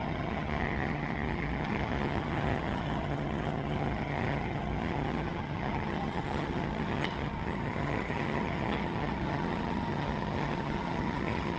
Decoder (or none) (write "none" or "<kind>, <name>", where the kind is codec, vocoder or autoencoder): vocoder, HiFi-GAN